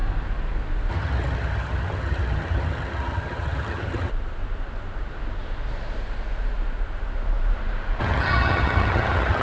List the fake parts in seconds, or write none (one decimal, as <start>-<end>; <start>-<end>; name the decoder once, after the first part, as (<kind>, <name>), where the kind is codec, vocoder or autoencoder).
0.9-4.1 (vocoder, HiFi-GAN); 8.0-9.4